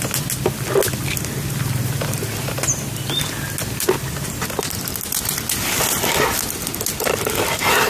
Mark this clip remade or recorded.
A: recorded